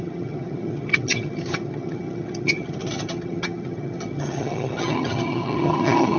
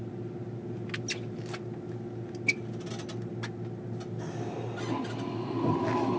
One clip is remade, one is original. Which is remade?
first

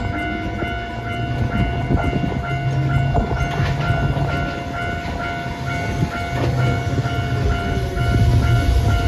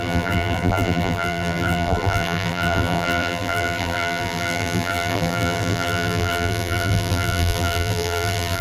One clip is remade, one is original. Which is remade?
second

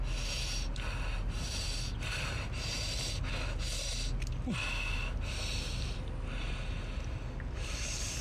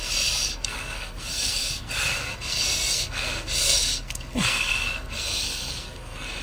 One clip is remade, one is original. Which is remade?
second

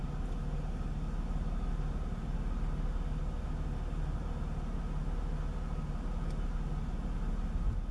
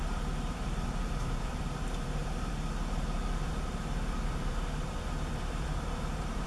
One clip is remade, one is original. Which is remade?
second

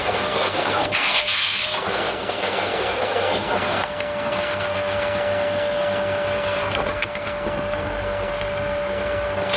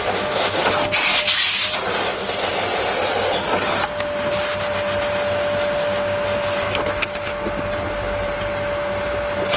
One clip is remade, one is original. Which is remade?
first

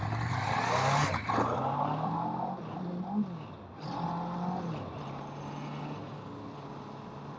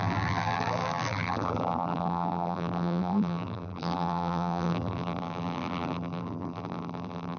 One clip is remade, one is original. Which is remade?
second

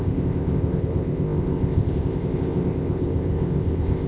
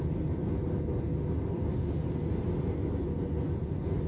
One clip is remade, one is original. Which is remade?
first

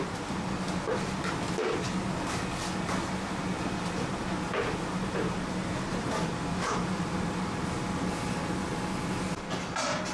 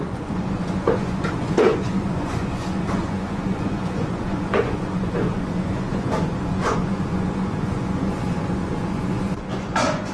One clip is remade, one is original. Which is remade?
second